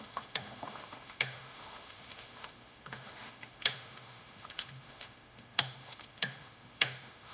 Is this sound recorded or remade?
remade